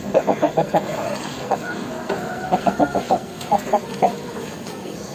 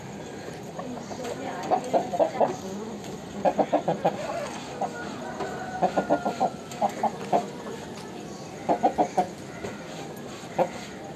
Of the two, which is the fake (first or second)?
first